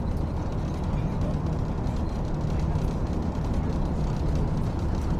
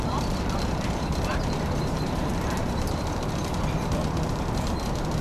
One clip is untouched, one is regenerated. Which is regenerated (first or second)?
second